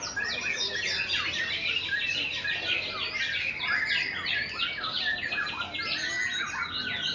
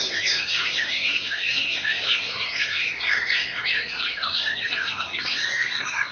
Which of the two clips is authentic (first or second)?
first